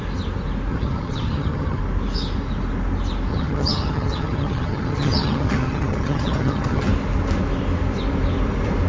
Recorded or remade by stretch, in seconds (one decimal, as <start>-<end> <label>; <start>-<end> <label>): 0.0-0.7 recorded; 0.7-1.8 remade; 1.8-3.3 recorded; 3.3-6.9 remade; 6.9-8.9 recorded